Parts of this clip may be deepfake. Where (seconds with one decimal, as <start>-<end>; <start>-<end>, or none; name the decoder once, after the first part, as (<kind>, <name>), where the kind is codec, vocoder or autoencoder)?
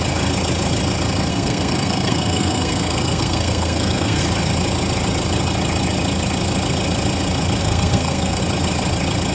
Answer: 1.3-4.2 (codec, SNAC); 7.6-8.4